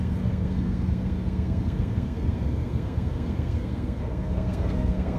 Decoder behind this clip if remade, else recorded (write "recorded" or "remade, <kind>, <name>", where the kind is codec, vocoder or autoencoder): remade, codec, SNAC